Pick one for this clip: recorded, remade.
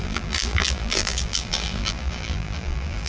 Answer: remade